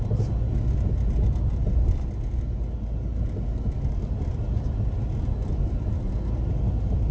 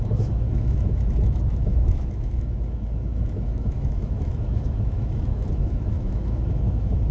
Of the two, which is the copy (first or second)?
second